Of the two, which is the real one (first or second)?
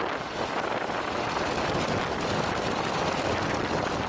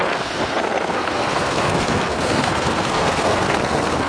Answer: first